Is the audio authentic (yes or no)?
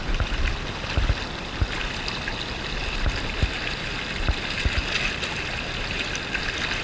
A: yes